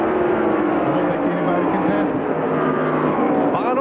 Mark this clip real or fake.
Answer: real